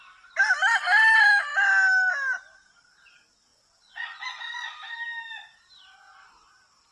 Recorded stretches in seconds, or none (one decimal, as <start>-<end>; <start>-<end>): 0.0-3.5; 4.4-6.9